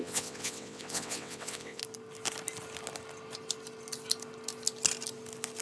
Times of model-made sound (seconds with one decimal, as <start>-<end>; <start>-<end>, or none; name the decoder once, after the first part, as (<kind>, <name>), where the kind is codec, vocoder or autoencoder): 0.0-1.8 (vocoder, WaveNeXt)